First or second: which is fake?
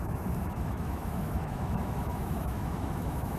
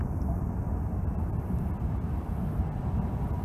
first